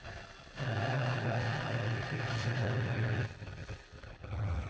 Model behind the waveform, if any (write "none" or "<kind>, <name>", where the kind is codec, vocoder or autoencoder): none